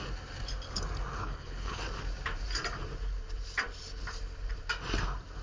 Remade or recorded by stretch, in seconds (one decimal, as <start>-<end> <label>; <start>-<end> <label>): 0.0-1.1 recorded; 1.1-1.8 remade; 1.8-5.4 recorded